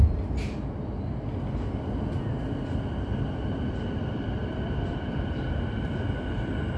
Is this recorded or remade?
recorded